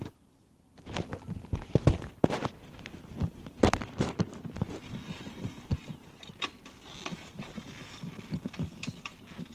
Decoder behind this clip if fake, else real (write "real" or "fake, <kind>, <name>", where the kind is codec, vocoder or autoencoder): real